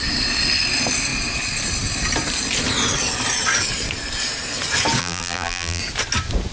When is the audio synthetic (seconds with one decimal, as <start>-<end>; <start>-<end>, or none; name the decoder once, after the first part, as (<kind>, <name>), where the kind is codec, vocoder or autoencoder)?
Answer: 5.0-5.8 (vocoder, BigVGAN v2)